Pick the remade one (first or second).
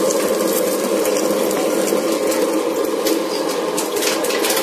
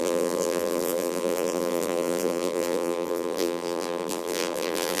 second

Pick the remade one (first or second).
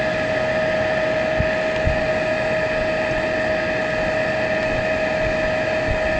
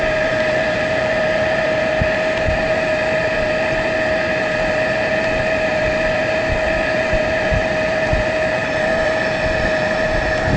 second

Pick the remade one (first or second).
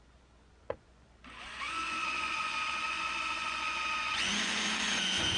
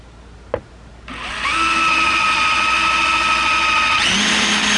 first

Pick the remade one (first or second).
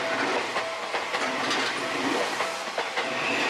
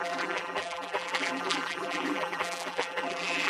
second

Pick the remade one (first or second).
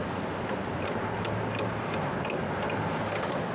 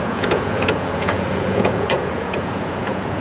second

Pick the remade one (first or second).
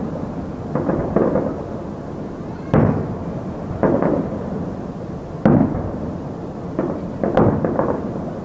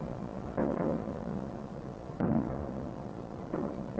second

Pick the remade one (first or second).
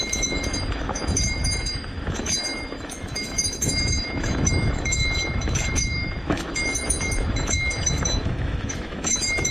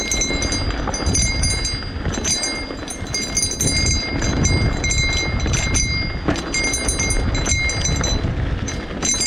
first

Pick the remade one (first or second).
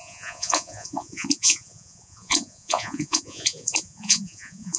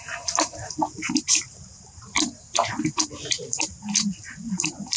first